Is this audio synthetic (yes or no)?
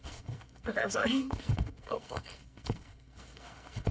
yes